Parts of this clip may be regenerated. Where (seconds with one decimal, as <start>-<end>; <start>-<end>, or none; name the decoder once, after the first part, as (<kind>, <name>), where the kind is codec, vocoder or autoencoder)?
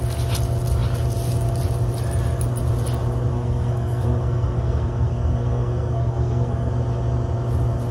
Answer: 3.3-6.7 (codec, SNAC)